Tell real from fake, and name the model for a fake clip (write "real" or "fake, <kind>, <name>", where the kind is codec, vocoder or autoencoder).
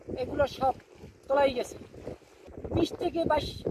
real